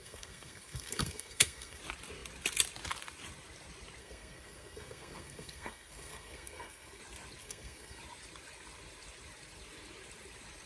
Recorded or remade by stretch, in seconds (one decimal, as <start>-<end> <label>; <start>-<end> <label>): 0.0-1.8 remade; 1.8-4.0 recorded; 4.0-7.0 remade; 7.0-7.4 recorded; 7.4-8.0 remade; 8.0-10.7 recorded